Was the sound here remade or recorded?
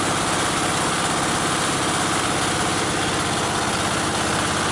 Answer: recorded